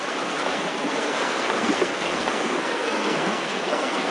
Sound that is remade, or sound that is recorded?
remade